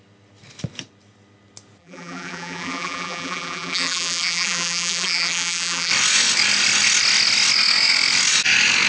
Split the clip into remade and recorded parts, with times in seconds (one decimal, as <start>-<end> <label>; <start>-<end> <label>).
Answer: 0.0-1.8 recorded; 1.8-5.9 remade; 5.9-8.9 recorded